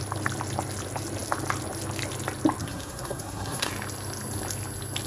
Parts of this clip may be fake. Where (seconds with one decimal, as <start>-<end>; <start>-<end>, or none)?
2.6-3.7